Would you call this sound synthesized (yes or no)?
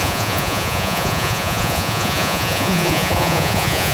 yes